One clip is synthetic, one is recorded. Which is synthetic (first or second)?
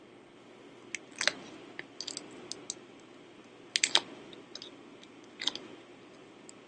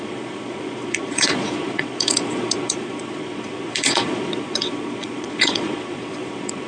second